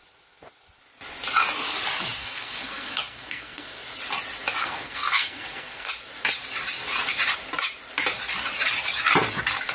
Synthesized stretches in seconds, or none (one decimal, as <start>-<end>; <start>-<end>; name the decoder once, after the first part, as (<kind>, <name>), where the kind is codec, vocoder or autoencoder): 2.2-3.8 (codec, SNAC); 4.6-5.9